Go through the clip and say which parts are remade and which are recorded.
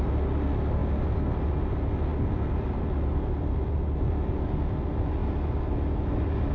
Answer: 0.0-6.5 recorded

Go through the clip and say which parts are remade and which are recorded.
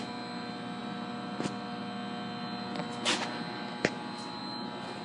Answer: 0.0-5.0 recorded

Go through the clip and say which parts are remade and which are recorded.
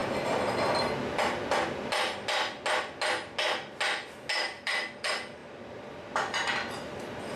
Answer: 0.0-4.4 recorded; 4.4-5.4 remade; 5.4-5.9 recorded; 5.9-7.4 remade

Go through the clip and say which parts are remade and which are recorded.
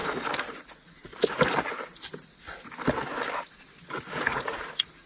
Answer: 0.0-0.6 recorded; 0.6-1.1 remade; 1.1-3.8 recorded; 3.8-5.1 remade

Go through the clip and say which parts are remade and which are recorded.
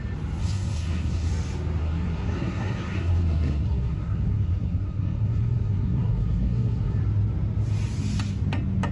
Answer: 0.0-0.4 recorded; 0.4-1.3 remade; 1.3-1.8 recorded; 1.8-7.0 remade; 7.0-8.9 recorded